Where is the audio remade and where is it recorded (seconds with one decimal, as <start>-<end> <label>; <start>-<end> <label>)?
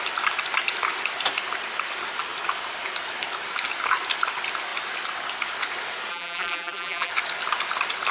0.0-6.1 recorded; 6.1-7.1 remade; 7.1-8.1 recorded